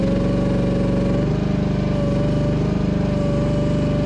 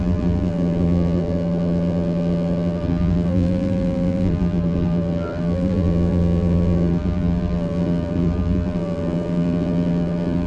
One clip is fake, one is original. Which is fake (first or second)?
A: second